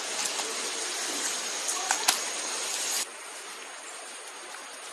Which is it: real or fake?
real